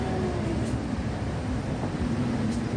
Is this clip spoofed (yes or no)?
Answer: no